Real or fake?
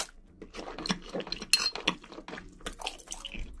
real